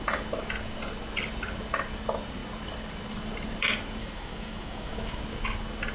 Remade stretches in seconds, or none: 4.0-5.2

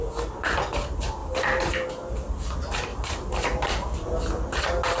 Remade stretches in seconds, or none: 1.2-1.9; 2.9-4.2

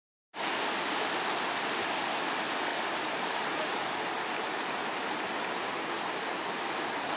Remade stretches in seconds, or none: 2.7-3.7

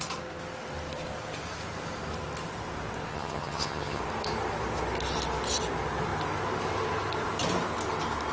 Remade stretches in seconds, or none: 3.1-4.0

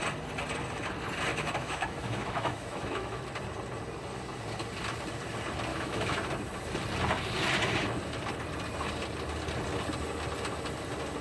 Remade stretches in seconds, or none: 1.3-3.2; 5.7-6.3